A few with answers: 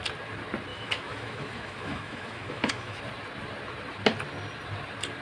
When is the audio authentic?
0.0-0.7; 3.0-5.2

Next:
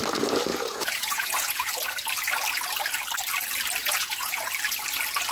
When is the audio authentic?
0.0-0.5; 1.7-3.8; 4.4-5.3

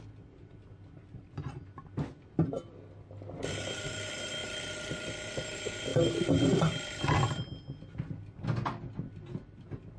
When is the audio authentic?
0.0-1.0; 2.2-4.4; 5.1-10.0

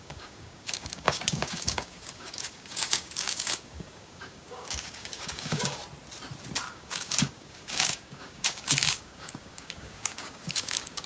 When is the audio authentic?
5.8-6.7